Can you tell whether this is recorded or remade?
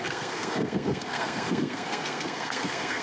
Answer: remade